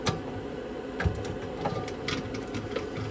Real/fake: real